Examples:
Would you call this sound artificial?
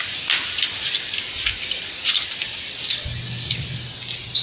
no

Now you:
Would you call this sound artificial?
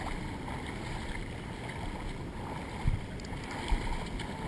no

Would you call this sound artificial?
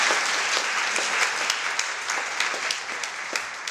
no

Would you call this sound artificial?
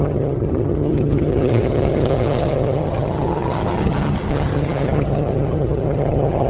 yes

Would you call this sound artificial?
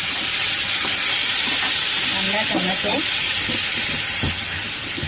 no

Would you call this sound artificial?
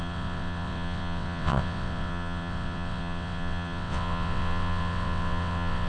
yes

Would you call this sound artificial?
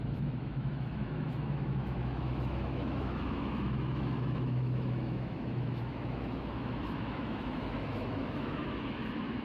yes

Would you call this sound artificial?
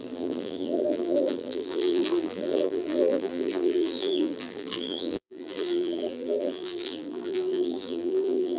yes